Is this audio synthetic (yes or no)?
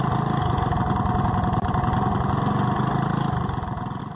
no